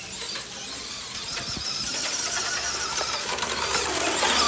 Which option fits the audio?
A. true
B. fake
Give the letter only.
A